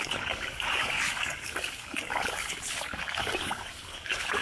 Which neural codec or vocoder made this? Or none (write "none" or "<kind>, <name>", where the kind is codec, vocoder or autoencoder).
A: codec, DAC